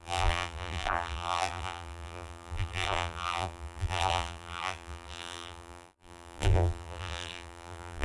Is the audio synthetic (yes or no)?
yes